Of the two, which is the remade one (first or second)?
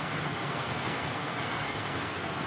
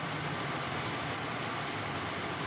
first